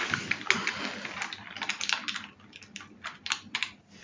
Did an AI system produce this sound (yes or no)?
no